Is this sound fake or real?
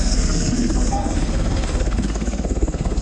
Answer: fake